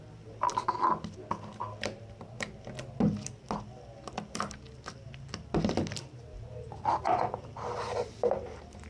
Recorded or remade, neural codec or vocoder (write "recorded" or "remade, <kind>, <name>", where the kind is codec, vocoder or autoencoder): recorded